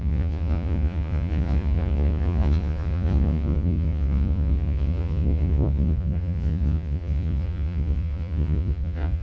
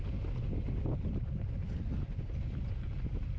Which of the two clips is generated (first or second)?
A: first